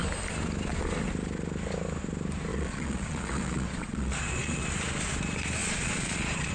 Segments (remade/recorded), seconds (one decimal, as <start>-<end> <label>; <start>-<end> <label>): 0.0-2.5 recorded; 2.5-4.6 remade; 4.6-5.6 recorded; 5.6-6.5 remade